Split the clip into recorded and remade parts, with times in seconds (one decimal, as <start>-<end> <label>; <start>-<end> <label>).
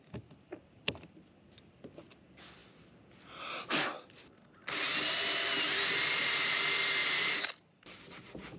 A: 0.0-7.0 recorded; 7.0-8.2 remade; 8.2-8.6 recorded